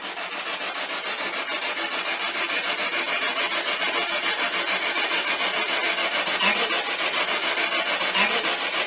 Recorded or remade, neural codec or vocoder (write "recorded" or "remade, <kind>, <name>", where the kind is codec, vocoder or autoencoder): recorded